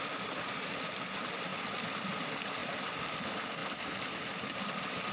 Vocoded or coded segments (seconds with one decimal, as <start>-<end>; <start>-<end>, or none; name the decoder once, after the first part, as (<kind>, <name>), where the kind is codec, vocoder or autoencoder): none